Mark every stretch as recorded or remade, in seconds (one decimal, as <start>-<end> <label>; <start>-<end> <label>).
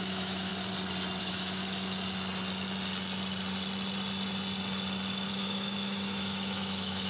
0.0-0.5 remade; 0.5-1.2 recorded; 1.2-1.6 remade; 1.6-5.3 recorded; 5.3-7.1 remade